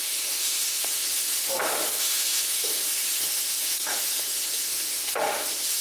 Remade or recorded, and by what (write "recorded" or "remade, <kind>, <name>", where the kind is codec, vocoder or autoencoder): remade, autoencoder, DAC-VAE